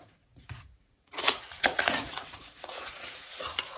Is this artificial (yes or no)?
yes